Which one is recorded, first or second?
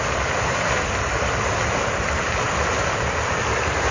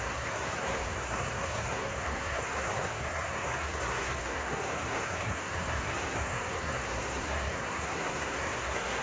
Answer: first